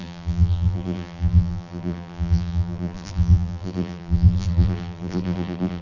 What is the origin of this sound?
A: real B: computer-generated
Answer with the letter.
B